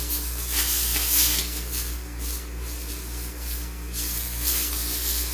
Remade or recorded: remade